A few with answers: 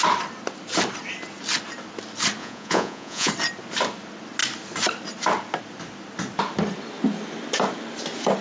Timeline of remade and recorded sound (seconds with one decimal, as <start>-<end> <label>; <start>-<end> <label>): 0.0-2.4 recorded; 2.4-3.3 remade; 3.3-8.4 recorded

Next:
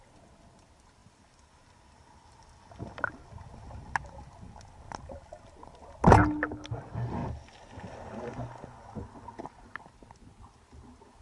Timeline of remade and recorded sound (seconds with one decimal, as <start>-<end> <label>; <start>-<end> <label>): 0.0-11.2 recorded

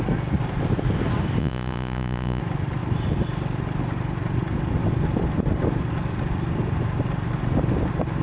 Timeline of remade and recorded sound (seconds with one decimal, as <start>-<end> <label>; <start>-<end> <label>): 0.0-1.4 recorded; 1.4-2.4 remade; 2.4-8.2 recorded

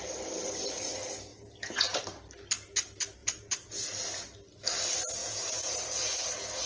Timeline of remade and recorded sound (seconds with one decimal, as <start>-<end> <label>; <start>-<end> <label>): 0.0-1.3 recorded; 1.3-2.0 remade; 2.0-3.2 recorded; 3.2-3.8 remade; 3.8-5.2 recorded; 5.2-6.3 remade; 6.3-6.7 recorded